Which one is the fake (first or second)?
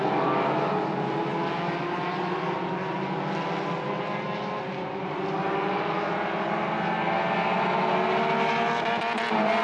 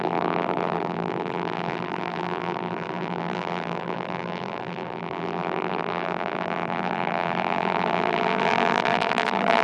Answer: second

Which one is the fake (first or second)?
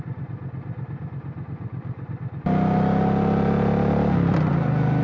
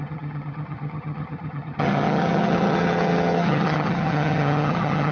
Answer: second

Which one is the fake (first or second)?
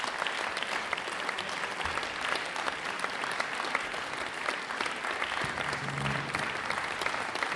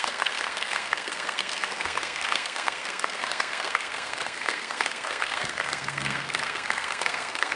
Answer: second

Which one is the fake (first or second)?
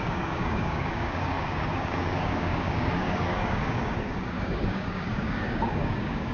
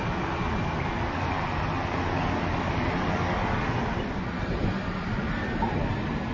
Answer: first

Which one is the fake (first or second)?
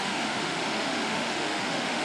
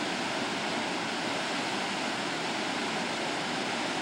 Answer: first